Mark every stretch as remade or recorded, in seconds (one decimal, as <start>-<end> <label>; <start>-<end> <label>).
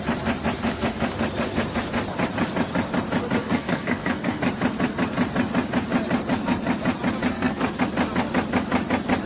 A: 0.0-3.4 recorded; 3.4-4.4 remade; 4.4-7.3 recorded; 7.3-7.8 remade; 7.8-9.3 recorded